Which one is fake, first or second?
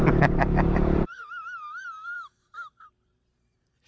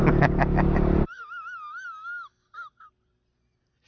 first